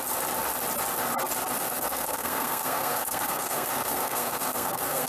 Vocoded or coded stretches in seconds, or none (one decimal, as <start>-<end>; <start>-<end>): 1.6-5.1